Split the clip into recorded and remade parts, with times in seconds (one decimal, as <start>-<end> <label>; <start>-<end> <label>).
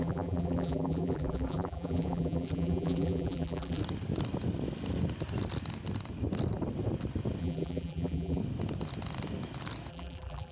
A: 0.0-3.8 remade; 3.8-7.4 recorded; 7.4-8.4 remade; 8.4-9.9 recorded; 9.9-10.5 remade